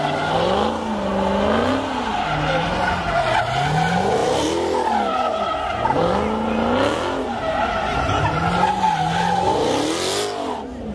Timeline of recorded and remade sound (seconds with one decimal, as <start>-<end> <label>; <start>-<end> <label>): 0.0-10.9 recorded